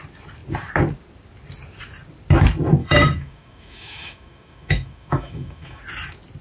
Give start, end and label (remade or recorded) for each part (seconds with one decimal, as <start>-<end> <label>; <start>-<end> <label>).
0.0-2.8 recorded; 2.8-5.8 remade; 5.8-6.4 recorded